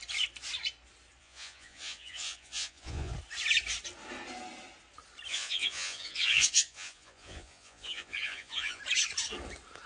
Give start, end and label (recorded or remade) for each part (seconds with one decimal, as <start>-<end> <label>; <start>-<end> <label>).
0.0-1.2 recorded; 1.2-3.1 remade; 3.1-5.3 recorded; 5.3-8.8 remade; 8.8-9.9 recorded